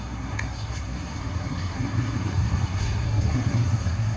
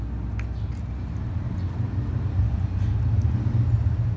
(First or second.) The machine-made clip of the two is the first